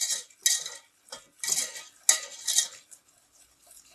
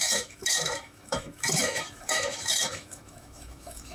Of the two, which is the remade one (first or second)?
second